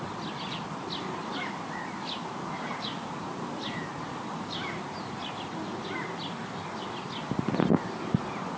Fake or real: real